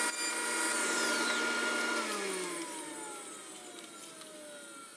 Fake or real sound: real